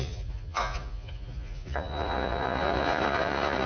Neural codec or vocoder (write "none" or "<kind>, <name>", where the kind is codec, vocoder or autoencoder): vocoder, Vocos